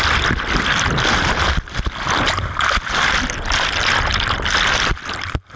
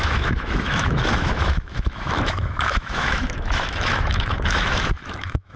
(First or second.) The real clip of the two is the first